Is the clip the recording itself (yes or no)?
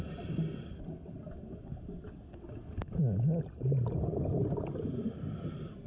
yes